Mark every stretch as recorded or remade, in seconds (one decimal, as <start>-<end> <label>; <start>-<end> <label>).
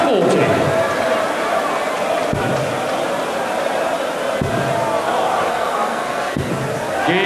0.0-5.5 recorded; 5.5-6.5 remade; 6.5-7.3 recorded